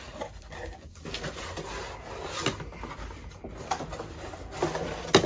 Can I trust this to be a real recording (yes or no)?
yes